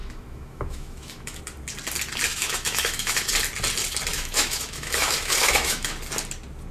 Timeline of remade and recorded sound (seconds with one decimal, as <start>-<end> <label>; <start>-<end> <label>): 0.0-1.4 remade; 1.4-2.3 recorded; 2.3-3.3 remade; 3.3-4.1 recorded; 4.1-6.0 remade; 6.0-6.7 recorded